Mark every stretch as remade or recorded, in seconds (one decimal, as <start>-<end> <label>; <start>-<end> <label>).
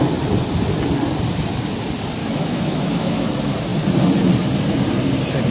0.0-2.2 recorded; 2.2-3.3 remade; 3.3-5.5 recorded